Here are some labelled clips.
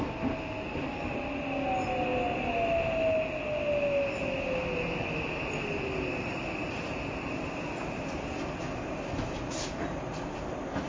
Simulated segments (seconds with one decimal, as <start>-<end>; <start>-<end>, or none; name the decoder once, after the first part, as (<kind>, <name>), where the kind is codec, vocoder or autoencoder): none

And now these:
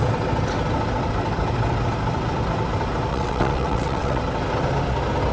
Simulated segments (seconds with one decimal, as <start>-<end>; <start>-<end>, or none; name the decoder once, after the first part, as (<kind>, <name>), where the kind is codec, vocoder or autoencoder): 3.1-4.2 (vocoder, WaveNeXt)

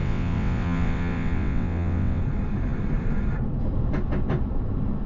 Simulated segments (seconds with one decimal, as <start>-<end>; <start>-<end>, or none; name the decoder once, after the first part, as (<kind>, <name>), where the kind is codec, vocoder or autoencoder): 0.0-2.2 (vocoder, WaveNeXt)